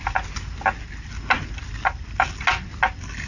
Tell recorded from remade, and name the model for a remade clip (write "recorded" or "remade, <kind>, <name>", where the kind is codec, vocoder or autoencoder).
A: recorded